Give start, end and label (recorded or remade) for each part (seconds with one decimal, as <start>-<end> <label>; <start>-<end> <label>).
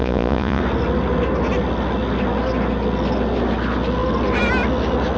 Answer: 0.0-0.6 remade; 0.6-5.2 recorded